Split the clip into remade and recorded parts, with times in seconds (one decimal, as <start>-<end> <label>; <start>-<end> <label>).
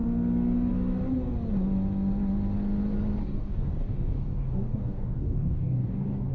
0.0-3.2 recorded; 3.2-6.3 remade